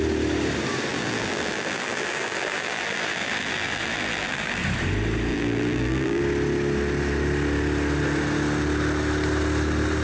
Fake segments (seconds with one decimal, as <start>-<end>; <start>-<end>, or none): 0.9-4.6; 5.3-6.2